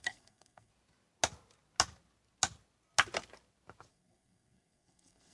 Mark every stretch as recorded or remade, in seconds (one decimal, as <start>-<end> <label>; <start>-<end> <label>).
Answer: 0.0-0.7 remade; 0.7-3.9 recorded; 3.9-5.3 remade